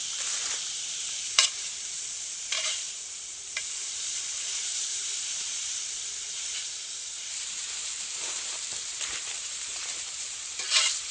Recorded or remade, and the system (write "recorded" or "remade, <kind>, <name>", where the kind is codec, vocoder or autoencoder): remade, vocoder, BigVGAN v2